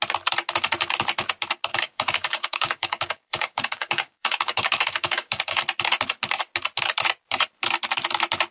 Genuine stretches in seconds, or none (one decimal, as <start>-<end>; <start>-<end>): 0.0-1.7; 5.6-8.5